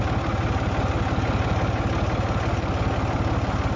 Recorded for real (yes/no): yes